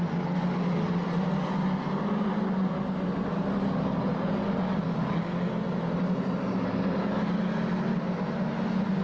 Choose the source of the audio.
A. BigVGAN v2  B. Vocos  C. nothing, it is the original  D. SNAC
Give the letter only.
C